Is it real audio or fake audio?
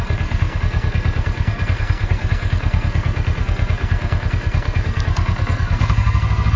fake